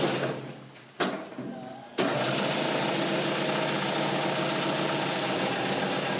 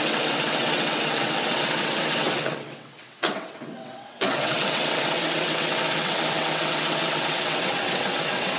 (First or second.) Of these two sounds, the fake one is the second